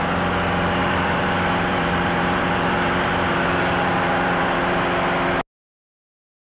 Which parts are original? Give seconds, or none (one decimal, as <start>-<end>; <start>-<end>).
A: 0.0-0.8; 4.8-6.6